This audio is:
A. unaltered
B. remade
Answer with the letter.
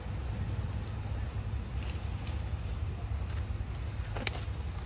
A